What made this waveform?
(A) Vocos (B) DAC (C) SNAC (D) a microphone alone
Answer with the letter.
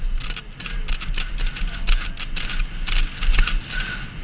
D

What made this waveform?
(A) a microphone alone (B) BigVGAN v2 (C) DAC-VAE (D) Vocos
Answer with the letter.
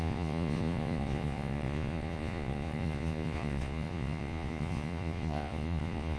D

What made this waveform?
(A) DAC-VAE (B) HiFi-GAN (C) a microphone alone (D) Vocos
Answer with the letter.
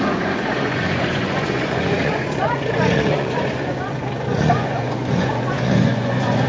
D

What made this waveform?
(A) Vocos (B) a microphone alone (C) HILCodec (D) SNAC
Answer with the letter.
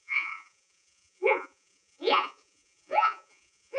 A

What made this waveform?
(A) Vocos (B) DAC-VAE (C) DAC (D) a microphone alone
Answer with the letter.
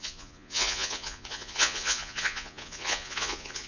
A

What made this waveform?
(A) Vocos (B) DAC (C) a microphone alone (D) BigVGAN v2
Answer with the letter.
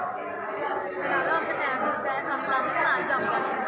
C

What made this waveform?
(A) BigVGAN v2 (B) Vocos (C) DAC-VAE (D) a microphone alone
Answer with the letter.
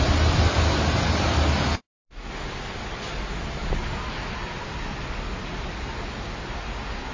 D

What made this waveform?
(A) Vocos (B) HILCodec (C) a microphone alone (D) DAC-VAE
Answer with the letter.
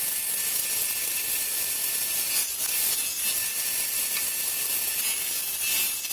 C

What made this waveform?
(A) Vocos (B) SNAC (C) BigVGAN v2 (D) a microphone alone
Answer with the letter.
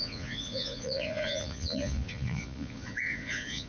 A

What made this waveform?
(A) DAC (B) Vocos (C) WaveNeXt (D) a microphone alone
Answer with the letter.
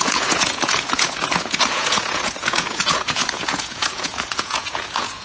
B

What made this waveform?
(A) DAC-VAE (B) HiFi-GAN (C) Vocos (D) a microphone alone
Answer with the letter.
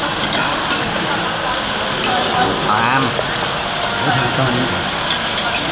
D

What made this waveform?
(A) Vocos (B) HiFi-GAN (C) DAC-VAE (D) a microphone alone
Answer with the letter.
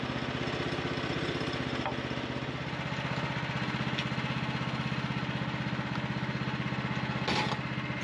D